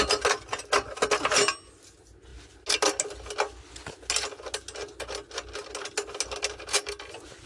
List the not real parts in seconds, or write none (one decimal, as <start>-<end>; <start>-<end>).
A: none